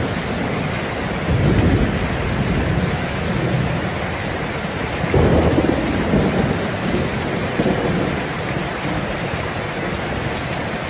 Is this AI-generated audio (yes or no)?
no